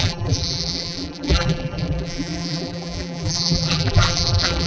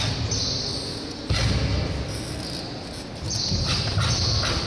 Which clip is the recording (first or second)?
second